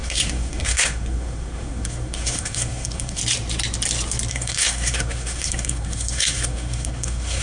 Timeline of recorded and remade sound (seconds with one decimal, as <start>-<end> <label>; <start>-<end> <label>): 0.0-3.2 remade; 3.2-4.3 recorded; 4.3-7.4 remade